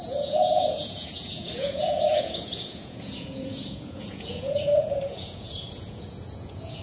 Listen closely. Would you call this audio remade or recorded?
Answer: remade